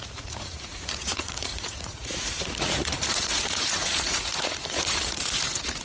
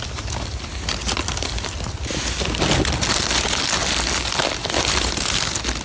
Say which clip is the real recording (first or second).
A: second